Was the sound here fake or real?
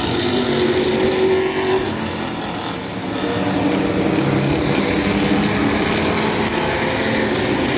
real